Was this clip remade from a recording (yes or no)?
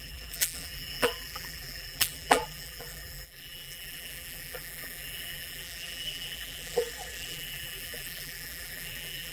yes